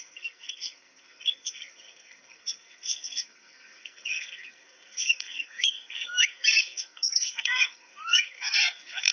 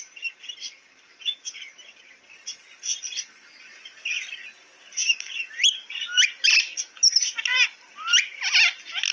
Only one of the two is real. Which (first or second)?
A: second